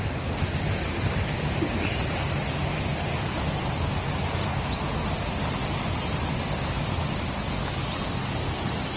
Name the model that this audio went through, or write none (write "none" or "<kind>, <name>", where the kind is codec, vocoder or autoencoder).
none